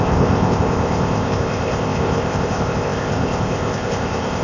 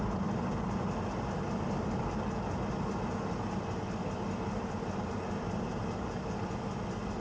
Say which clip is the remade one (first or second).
first